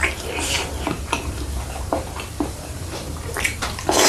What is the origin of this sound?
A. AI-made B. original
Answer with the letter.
A